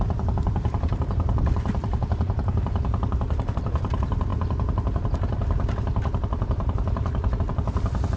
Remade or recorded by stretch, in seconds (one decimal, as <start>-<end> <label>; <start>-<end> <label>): 0.0-1.9 recorded; 1.9-3.5 remade; 3.5-8.2 recorded